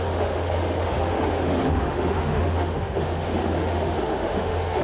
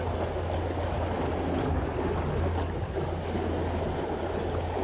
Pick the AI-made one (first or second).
first